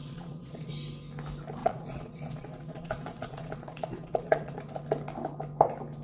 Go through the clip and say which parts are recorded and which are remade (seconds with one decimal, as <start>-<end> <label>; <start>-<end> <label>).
0.0-0.7 remade; 0.7-1.6 recorded; 1.6-4.6 remade; 4.6-6.0 recorded